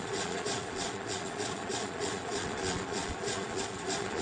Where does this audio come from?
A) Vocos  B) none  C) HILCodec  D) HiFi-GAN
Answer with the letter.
A